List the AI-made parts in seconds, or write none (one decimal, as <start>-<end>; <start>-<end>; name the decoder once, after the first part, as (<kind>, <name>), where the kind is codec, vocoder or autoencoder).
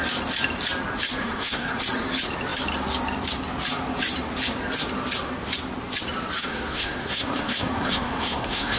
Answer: 1.2-1.8 (codec, SNAC); 6.4-8.8